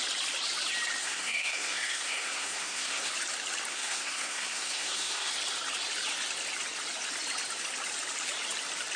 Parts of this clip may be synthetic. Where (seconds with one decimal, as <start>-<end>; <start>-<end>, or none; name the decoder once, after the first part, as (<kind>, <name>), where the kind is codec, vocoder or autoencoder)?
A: 1.0-3.1 (codec, SNAC); 3.7-5.3